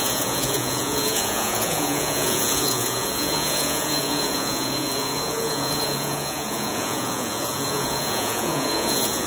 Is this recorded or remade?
remade